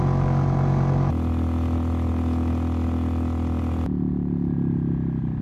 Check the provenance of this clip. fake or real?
real